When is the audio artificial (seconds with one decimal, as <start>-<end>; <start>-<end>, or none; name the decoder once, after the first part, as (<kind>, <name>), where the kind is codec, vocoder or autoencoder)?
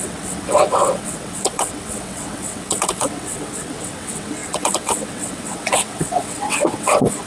0.0-7.3 (vocoder, WaveNeXt)